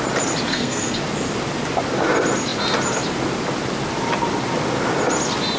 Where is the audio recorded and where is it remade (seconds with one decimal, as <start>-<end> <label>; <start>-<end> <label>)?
0.0-0.5 recorded; 0.5-1.0 remade; 1.0-5.6 recorded